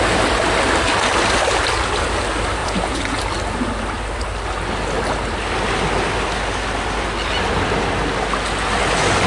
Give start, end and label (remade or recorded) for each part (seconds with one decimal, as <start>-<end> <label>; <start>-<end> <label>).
0.0-2.6 recorded; 2.6-3.2 remade; 3.2-9.3 recorded